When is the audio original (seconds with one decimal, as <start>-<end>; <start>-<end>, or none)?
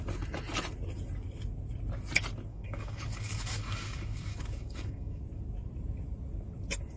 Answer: 0.0-2.5; 5.2-7.0